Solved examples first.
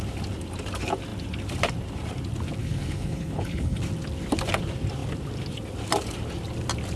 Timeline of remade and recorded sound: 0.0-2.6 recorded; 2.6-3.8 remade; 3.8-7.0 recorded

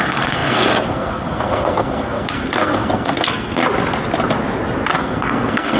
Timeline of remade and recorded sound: 0.0-3.6 remade; 3.6-5.0 recorded; 5.0-5.8 remade